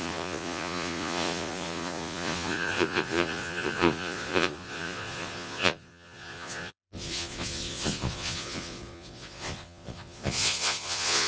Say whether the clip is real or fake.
fake